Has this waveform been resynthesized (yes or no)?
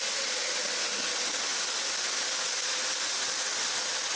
no